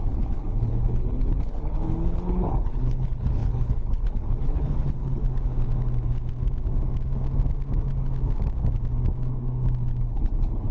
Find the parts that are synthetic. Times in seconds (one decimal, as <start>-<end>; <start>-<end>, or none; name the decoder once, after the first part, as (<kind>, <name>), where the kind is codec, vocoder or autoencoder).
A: 0.0-5.2 (codec, HILCodec); 10.0-10.7